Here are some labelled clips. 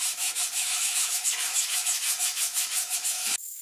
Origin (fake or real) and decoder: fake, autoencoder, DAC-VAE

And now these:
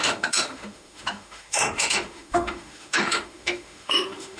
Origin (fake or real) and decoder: fake, autoencoder, DAC-VAE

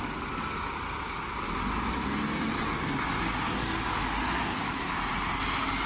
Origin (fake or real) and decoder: real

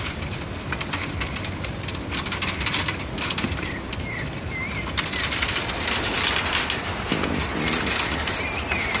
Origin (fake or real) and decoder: real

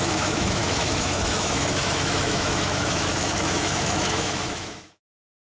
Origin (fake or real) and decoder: fake, autoencoder, DAC-VAE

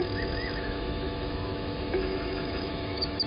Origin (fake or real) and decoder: fake, autoencoder, DAC-VAE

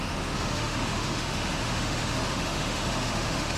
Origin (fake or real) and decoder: fake, autoencoder, DAC-VAE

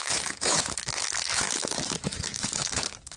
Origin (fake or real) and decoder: fake, autoencoder, DAC-VAE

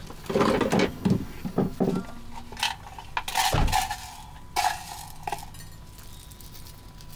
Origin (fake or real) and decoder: real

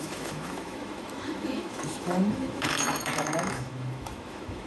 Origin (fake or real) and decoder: fake, autoencoder, DAC-VAE